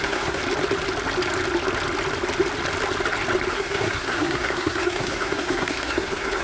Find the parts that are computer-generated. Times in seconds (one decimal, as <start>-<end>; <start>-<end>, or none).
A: 0.0-0.4; 3.5-6.4